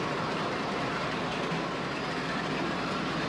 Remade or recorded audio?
remade